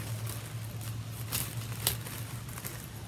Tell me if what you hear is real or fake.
real